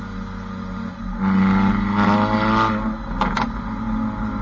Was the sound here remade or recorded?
recorded